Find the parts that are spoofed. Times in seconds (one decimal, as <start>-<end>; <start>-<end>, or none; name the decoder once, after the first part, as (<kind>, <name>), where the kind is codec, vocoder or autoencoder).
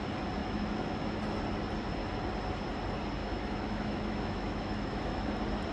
0.4-1.2 (autoencoder, DAC-VAE); 3.2-5.3